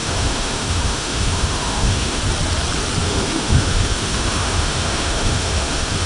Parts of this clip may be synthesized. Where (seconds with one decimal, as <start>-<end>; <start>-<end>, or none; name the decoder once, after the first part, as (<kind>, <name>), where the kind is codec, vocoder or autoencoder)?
0.0-2.2 (autoencoder, DAC-VAE); 3.0-6.1